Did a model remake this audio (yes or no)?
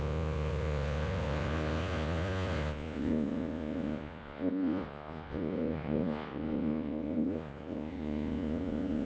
yes